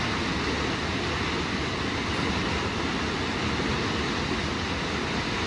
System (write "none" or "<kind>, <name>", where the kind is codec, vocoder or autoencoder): none